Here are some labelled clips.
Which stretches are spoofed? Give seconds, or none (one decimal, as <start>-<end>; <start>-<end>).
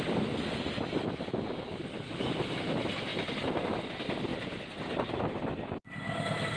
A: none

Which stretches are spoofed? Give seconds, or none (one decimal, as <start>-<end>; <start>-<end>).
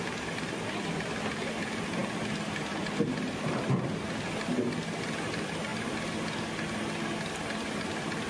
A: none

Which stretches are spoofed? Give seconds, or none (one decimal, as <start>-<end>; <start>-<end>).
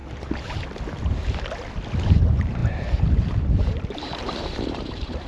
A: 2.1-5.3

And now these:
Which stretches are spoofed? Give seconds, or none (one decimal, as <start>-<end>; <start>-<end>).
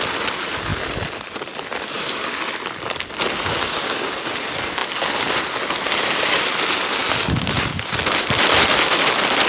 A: none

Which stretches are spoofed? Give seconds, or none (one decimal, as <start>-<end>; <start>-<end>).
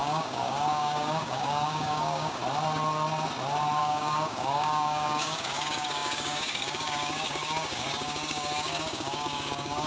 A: 0.0-2.4; 3.8-9.9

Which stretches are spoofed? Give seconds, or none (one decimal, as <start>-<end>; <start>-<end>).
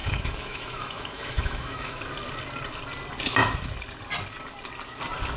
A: 0.0-2.0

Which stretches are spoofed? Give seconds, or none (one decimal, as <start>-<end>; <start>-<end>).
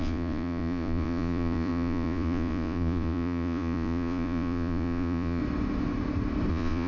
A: 0.0-5.4; 6.5-6.9